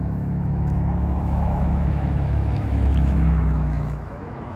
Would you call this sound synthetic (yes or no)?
yes